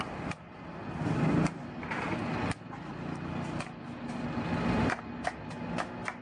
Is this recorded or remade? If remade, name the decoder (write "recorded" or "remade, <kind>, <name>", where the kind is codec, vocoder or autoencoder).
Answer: recorded